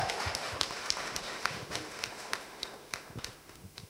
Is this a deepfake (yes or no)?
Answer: yes